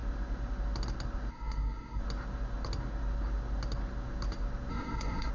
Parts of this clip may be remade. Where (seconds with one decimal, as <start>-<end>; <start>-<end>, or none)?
1.3-2.0; 4.7-5.3